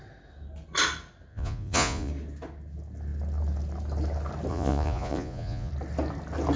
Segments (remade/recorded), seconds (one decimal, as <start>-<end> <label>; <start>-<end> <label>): 0.0-1.3 recorded; 1.3-2.1 remade; 2.1-4.5 recorded; 4.5-5.7 remade; 5.7-6.6 recorded